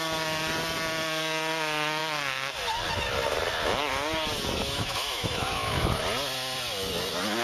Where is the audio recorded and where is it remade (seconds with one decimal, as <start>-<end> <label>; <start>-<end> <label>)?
0.0-4.6 recorded; 4.6-6.0 remade; 6.0-7.4 recorded